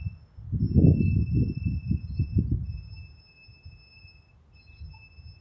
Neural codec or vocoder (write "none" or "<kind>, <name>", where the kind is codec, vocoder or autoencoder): none